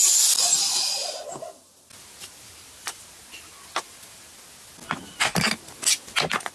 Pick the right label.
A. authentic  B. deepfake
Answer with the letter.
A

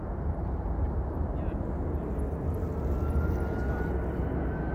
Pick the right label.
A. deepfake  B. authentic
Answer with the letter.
B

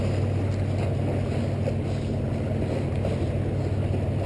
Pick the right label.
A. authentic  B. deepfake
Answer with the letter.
A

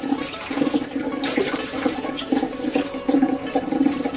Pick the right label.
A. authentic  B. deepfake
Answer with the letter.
B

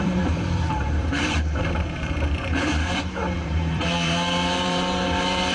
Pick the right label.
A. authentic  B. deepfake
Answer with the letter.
B